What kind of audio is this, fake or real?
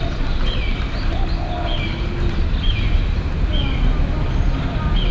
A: real